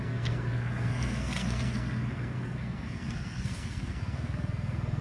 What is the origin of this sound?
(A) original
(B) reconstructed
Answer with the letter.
B